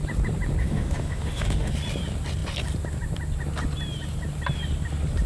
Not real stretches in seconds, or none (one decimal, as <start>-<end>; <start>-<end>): 0.6-1.7